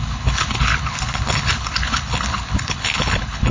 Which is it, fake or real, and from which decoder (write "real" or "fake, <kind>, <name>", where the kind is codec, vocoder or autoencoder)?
fake, codec, HILCodec